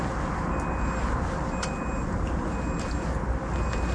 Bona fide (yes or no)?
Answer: yes